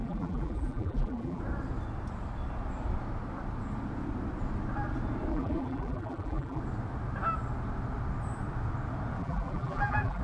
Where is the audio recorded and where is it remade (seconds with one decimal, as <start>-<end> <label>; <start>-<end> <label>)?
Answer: 0.0-1.4 remade; 1.4-5.3 recorded; 5.3-6.6 remade; 6.6-9.2 recorded; 9.2-10.2 remade